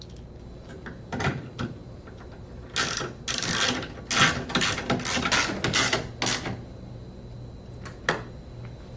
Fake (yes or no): no